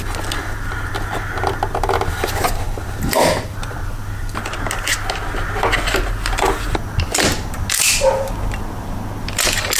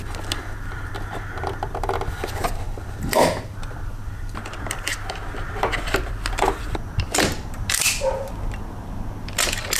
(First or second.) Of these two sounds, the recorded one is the first